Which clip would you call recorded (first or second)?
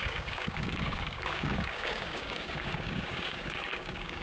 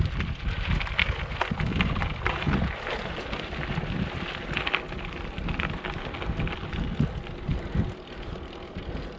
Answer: second